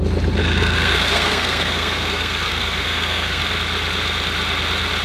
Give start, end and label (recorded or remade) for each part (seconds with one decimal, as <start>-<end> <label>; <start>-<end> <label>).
0.0-0.4 recorded; 0.4-3.4 remade; 3.4-5.0 recorded